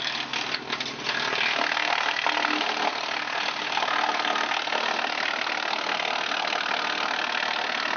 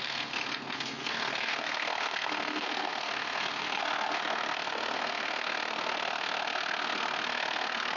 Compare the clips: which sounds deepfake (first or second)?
second